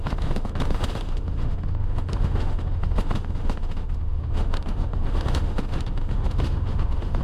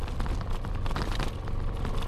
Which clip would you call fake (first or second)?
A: first